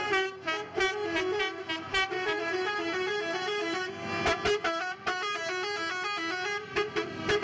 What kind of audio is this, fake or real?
real